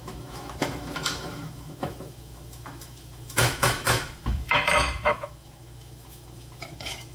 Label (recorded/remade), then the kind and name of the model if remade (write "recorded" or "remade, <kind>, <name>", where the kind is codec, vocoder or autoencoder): remade, autoencoder, DAC-VAE